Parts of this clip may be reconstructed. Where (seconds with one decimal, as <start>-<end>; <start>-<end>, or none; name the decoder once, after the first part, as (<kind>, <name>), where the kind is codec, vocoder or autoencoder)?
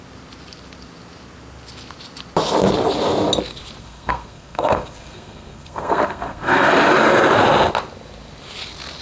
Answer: 3.8-6.7 (codec, SNAC)